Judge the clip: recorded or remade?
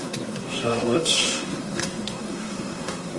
remade